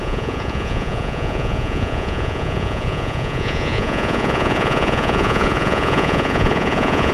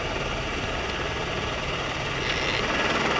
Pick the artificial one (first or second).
first